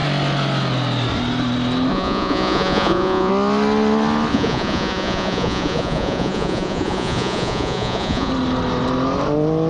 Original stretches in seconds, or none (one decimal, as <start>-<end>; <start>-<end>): 0.0-1.9; 3.3-4.3; 8.3-9.7